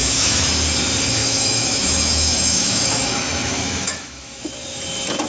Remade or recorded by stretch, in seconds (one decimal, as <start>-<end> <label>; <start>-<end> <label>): 0.0-0.5 remade; 0.5-1.2 recorded; 1.2-4.4 remade; 4.4-5.3 recorded